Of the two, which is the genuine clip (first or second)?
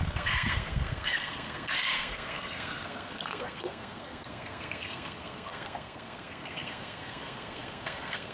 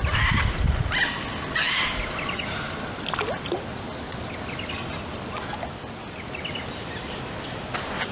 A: second